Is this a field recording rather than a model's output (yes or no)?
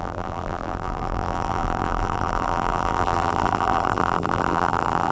no